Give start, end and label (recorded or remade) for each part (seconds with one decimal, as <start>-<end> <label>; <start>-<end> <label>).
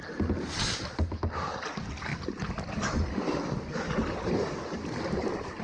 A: 0.0-5.6 recorded